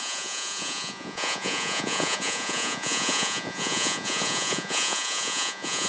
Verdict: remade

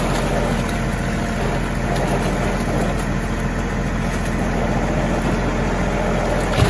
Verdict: recorded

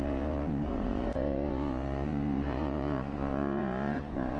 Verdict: remade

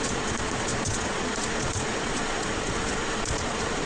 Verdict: remade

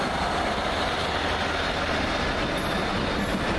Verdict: recorded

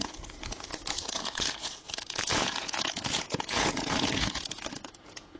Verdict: remade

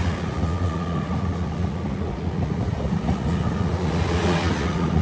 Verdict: remade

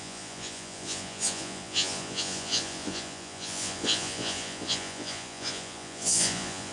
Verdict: remade